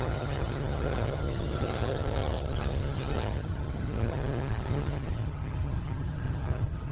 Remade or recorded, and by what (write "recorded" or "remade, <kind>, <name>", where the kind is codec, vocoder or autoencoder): remade, vocoder, HiFi-GAN